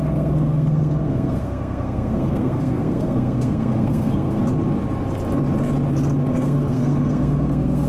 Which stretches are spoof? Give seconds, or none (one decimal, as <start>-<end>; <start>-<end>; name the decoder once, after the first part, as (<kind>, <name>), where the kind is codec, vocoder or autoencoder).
0.0-4.4 (codec, SNAC); 6.3-7.9